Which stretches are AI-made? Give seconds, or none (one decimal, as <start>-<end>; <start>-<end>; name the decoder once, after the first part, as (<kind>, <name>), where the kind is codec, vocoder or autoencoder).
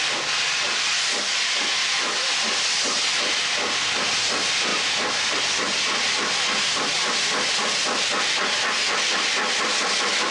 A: none